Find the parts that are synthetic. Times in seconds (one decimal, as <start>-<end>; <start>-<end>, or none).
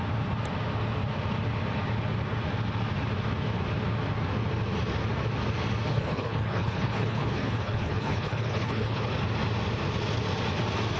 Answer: 5.9-9.1